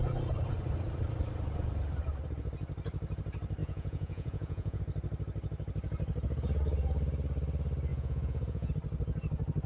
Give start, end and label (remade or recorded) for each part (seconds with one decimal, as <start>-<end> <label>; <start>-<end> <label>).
0.0-3.6 recorded; 3.6-4.8 remade; 4.8-7.9 recorded; 7.9-8.7 remade; 8.7-9.7 recorded